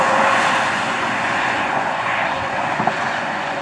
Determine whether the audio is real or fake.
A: fake